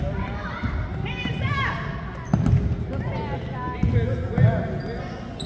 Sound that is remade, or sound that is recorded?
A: recorded